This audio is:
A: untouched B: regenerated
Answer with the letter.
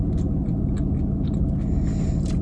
A